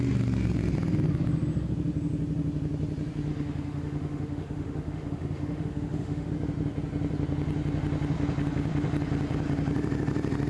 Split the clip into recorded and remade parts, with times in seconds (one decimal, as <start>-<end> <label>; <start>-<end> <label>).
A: 0.0-3.3 recorded; 3.3-6.3 remade; 6.3-10.5 recorded